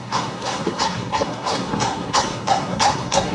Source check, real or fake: fake